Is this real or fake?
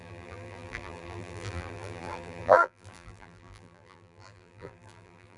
fake